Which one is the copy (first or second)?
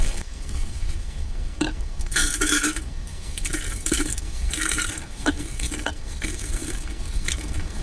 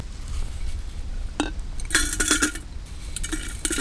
first